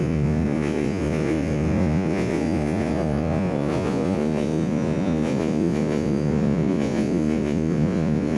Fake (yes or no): yes